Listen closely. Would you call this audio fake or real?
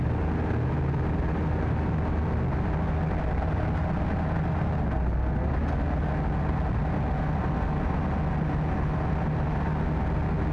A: real